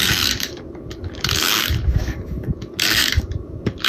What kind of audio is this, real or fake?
fake